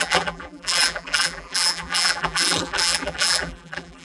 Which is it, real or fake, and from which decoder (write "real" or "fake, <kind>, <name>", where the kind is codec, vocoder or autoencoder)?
fake, vocoder, BigVGAN v2